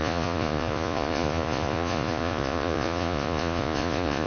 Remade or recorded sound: remade